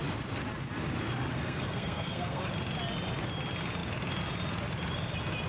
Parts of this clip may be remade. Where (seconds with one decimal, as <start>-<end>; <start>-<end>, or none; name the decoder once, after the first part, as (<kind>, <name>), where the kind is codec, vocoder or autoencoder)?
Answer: 1.3-2.4 (codec, SNAC)